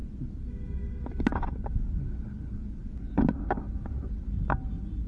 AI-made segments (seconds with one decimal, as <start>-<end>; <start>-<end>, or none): none